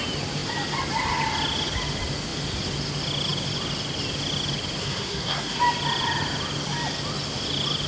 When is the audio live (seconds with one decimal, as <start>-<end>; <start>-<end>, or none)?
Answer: 0.0-4.8; 5.6-7.9